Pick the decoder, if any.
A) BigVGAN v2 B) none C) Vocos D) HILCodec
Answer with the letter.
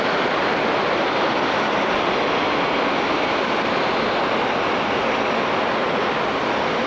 B